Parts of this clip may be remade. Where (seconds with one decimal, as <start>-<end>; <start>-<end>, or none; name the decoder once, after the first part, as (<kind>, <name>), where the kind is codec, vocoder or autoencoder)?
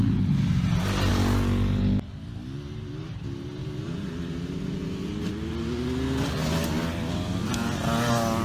none